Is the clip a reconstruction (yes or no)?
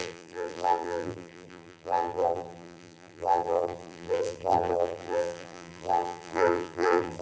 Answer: yes